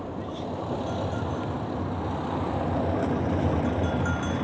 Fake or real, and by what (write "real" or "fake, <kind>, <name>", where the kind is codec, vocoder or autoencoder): real